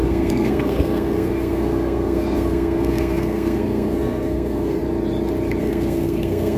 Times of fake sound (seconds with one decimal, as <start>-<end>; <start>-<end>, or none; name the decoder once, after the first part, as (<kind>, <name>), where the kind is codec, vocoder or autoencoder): 0.0-4.8 (codec, SNAC); 5.6-6.6